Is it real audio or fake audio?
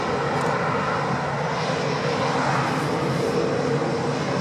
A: real